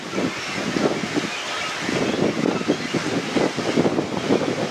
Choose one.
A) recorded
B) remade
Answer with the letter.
A